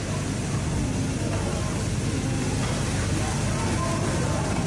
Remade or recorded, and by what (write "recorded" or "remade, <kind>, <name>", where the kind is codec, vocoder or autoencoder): recorded